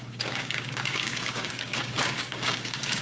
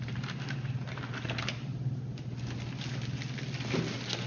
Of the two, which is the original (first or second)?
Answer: second